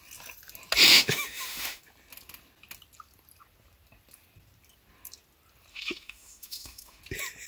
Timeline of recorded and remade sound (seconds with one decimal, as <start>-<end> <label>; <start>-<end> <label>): 0.0-0.9 recorded; 0.9-1.8 remade; 1.8-5.7 recorded; 5.7-7.0 remade; 7.0-7.5 recorded